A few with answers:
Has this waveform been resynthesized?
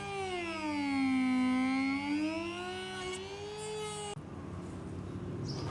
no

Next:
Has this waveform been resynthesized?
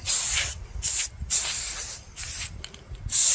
no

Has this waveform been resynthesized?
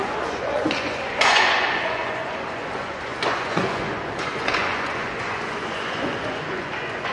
yes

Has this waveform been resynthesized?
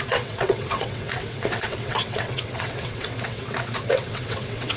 yes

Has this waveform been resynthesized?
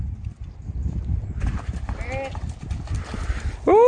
no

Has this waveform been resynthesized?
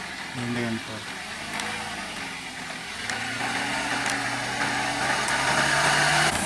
no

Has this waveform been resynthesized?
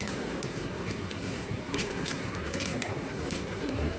yes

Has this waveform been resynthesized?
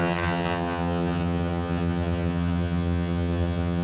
yes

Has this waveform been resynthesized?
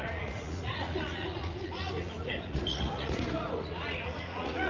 yes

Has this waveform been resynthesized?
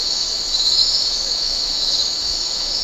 yes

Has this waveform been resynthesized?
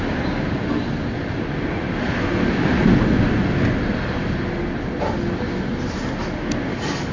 no